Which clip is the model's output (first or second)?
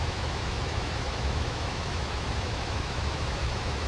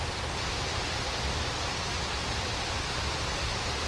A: first